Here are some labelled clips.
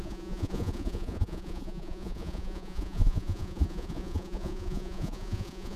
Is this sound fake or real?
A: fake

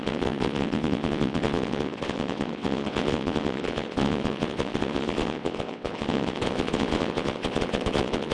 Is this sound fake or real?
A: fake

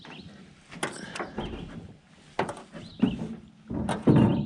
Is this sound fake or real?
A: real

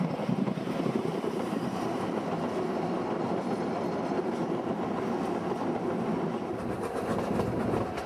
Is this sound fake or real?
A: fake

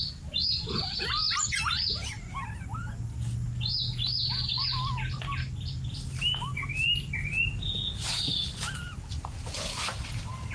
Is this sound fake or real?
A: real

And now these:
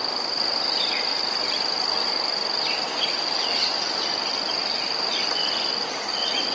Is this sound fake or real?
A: real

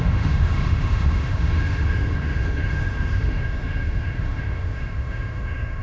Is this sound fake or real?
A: fake